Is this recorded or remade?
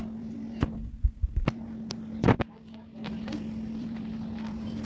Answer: remade